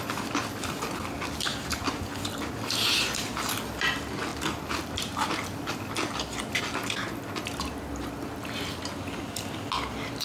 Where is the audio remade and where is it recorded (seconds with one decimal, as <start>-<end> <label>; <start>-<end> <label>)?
0.0-1.5 recorded; 1.5-3.6 remade; 3.6-10.2 recorded